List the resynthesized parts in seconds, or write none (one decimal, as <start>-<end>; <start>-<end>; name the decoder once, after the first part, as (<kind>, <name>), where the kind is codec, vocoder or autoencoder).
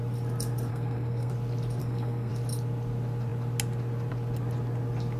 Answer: 0.7-1.3 (codec, SNAC); 1.8-2.3